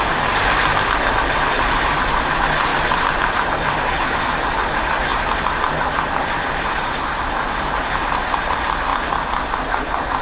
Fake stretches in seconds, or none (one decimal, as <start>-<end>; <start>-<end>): 2.7-4.2; 5.1-7.2